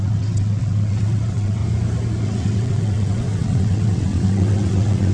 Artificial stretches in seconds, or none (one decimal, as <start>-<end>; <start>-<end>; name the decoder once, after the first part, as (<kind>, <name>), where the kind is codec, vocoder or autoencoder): 0.0-1.6 (vocoder, WaveNeXt); 2.2-5.1